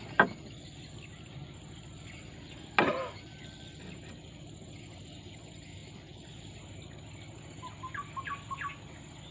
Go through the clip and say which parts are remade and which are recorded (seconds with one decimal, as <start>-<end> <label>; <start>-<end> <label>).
0.0-9.3 recorded